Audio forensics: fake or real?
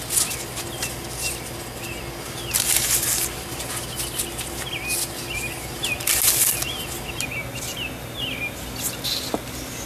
real